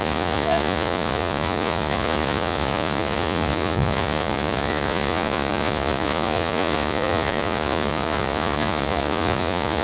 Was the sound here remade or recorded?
remade